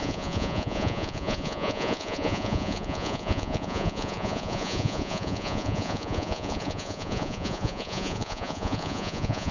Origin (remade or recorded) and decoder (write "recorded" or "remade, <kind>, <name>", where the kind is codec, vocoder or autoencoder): remade, vocoder, Vocos